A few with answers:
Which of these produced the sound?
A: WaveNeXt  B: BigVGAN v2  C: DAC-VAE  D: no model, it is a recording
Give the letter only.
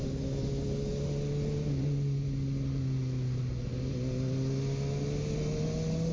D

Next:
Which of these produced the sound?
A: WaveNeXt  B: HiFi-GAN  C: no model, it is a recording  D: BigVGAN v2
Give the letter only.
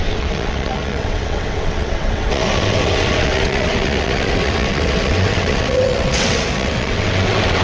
A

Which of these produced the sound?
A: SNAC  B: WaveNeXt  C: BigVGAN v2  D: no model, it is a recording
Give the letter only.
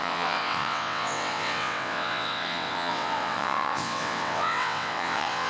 B